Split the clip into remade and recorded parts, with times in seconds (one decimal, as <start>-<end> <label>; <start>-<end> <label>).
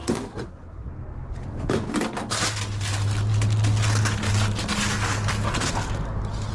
0.0-0.9 remade; 0.9-6.5 recorded